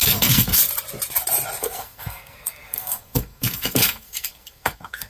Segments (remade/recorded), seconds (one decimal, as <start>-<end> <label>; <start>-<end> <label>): 0.0-0.6 remade; 0.6-1.6 recorded; 1.6-5.1 remade